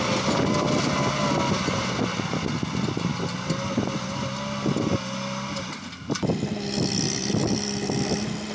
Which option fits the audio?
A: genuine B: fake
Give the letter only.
A